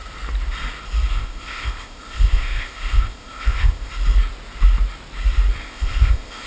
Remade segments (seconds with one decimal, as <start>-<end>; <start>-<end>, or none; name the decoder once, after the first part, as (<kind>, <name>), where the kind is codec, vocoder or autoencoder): 1.1-3.9 (codec, ZipCodec); 5.6-6.5